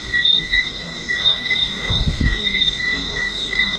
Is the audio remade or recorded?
remade